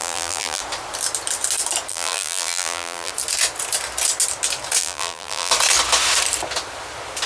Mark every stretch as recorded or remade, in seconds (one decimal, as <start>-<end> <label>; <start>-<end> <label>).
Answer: 0.0-0.6 remade; 0.6-1.9 recorded; 1.9-3.1 remade; 3.1-4.8 recorded; 4.8-5.5 remade; 5.5-7.3 recorded

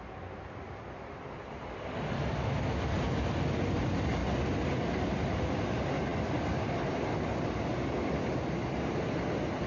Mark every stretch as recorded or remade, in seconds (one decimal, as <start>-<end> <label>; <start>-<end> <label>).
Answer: 0.0-9.7 recorded

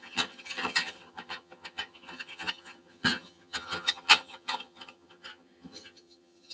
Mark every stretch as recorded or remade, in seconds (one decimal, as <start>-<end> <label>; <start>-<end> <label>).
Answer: 0.0-6.5 remade